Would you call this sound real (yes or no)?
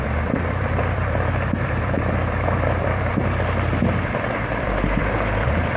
no